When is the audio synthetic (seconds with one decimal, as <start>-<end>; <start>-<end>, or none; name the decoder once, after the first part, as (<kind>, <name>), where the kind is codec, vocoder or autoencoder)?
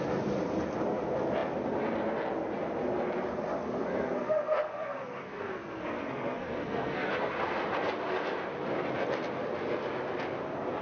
3.8-7.1 (codec, SNAC)